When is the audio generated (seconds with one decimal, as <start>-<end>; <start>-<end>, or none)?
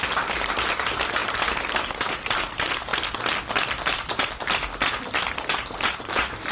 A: 0.0-1.2; 1.8-2.9; 5.9-6.5